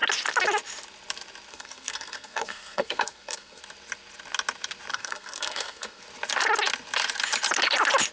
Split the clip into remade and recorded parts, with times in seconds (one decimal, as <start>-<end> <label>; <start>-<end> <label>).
0.0-1.5 recorded; 1.5-3.6 remade; 3.6-4.9 recorded; 4.9-6.0 remade; 6.0-8.1 recorded